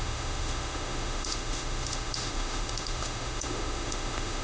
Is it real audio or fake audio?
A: fake